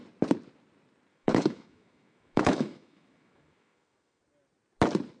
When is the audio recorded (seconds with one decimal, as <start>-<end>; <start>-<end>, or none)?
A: 0.0-1.1; 4.2-5.2